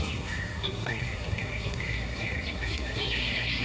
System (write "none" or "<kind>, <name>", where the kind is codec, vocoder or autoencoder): codec, SNAC